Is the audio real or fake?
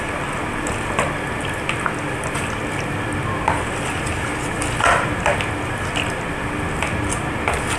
real